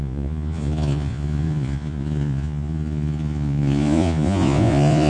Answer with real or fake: fake